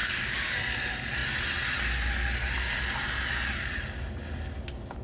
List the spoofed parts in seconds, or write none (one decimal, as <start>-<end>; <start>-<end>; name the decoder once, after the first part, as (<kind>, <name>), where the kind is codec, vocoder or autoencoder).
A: 0.0-0.6 (codec, DAC)